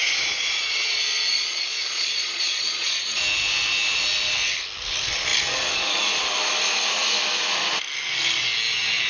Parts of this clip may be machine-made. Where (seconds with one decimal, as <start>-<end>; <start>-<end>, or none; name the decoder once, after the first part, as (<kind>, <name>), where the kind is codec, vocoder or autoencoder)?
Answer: 0.0-3.2 (vocoder, Vocos)